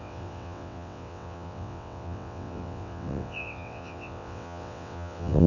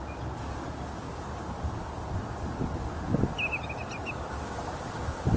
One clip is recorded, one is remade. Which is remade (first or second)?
first